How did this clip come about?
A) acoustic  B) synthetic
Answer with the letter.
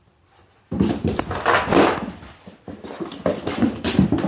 B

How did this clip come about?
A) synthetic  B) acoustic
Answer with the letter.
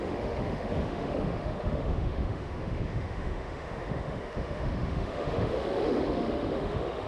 A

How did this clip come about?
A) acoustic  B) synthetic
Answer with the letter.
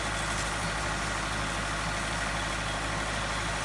A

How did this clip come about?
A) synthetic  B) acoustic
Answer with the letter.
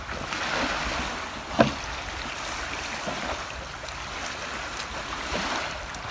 B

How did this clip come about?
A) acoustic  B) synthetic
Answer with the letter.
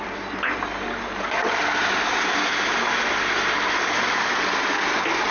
A